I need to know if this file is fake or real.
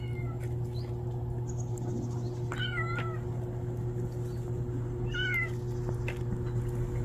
real